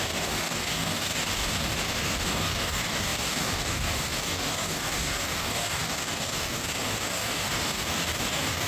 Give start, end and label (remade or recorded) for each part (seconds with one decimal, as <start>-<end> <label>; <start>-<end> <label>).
0.0-8.7 remade